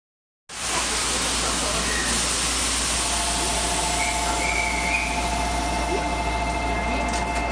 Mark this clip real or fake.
real